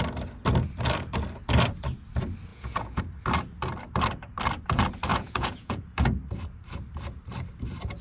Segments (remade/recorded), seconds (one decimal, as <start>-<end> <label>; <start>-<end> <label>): 0.0-2.5 recorded; 2.5-3.0 remade; 3.0-5.1 recorded; 5.1-5.8 remade; 5.8-8.0 recorded